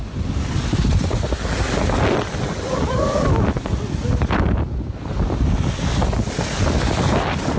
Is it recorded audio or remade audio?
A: recorded